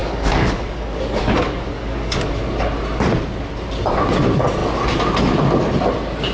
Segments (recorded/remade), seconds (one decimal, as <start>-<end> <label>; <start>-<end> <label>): 0.0-2.4 remade; 2.4-6.3 recorded